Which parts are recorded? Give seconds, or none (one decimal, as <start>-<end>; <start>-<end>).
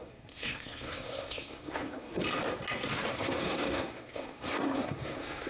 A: 2.2-3.1